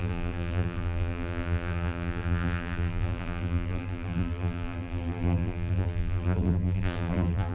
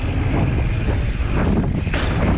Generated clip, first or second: first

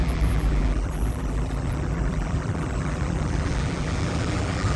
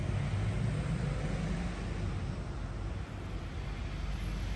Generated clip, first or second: first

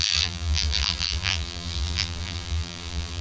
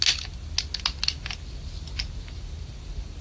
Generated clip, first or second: first